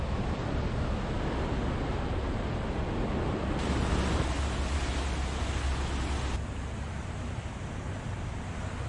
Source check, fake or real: real